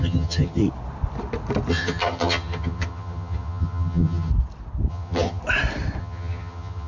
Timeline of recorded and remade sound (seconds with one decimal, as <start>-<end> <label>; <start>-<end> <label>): 0.0-0.6 remade; 0.6-1.7 recorded; 1.7-4.3 remade; 4.3-4.9 recorded; 4.9-5.4 remade; 5.4-6.0 recorded; 6.0-6.9 remade